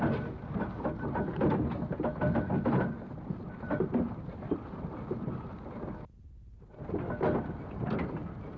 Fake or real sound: real